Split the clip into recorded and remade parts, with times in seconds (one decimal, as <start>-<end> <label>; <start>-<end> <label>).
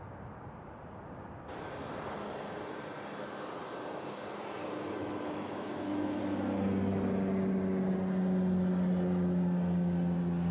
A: 0.0-5.0 recorded; 5.0-6.2 remade; 6.2-10.5 recorded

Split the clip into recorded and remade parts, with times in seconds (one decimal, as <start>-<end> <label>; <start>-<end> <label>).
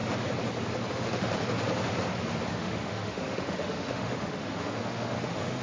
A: 0.0-0.9 recorded; 0.9-1.3 remade; 1.3-2.5 recorded; 2.5-5.6 remade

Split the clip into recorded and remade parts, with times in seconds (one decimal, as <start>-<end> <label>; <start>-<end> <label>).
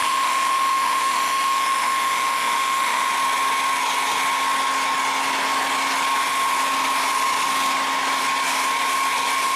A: 0.0-3.1 remade; 3.1-9.6 recorded